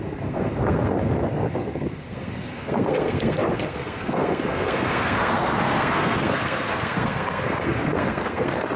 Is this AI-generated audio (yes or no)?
yes